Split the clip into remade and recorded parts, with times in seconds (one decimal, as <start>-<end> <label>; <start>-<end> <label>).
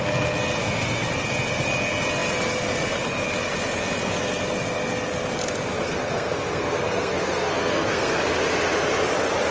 0.0-5.8 recorded; 5.8-8.2 remade; 8.2-9.5 recorded